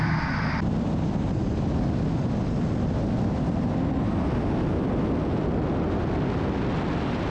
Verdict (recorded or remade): recorded